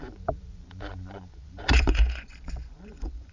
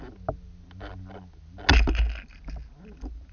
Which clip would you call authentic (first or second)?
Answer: second